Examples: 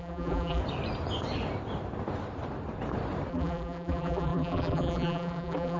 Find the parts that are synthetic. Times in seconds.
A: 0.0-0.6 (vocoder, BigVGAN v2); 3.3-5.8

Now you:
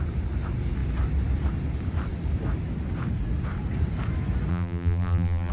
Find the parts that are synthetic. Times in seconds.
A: 4.5-5.5 (vocoder, BigVGAN v2)

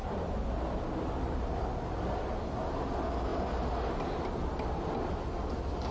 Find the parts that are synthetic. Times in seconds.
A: 0.0-0.7 (vocoder, BigVGAN v2)

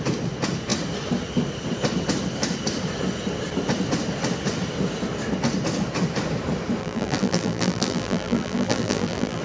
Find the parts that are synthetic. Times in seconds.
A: 6.8-9.4 (vocoder, BigVGAN v2)

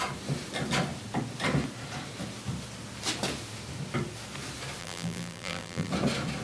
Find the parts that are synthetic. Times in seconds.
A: 4.8-5.9 (vocoder, BigVGAN v2)